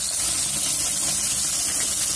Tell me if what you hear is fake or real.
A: real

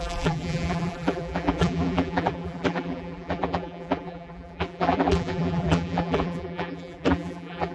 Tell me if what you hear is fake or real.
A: fake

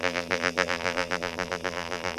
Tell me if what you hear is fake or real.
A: fake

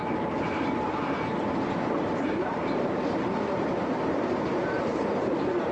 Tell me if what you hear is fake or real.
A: fake